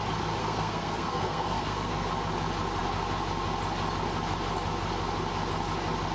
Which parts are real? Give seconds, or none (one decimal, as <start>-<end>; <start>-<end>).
0.0-0.4; 2.1-6.1